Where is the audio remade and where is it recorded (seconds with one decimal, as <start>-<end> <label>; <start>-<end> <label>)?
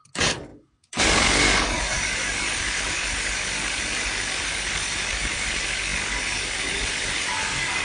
0.0-7.8 remade